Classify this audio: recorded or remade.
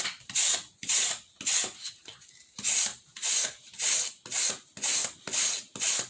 recorded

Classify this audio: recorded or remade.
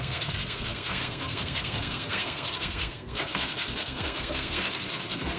remade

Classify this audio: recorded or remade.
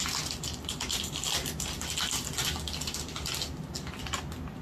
recorded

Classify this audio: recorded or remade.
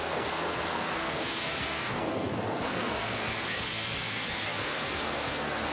remade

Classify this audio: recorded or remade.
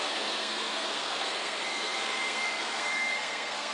remade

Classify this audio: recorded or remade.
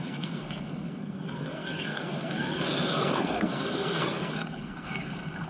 remade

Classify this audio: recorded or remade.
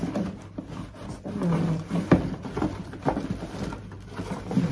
recorded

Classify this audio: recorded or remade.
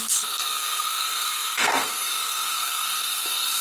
remade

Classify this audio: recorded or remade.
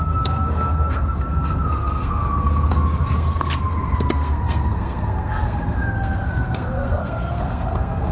remade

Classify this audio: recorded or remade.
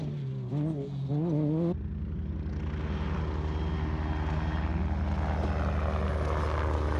recorded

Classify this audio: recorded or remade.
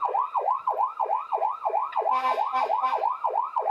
recorded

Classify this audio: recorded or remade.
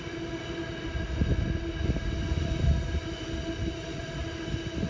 recorded